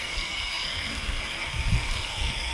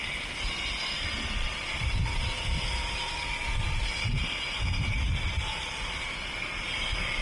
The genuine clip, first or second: second